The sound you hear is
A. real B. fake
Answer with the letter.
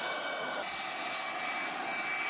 A